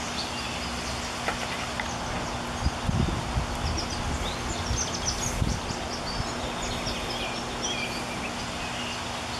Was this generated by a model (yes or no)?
no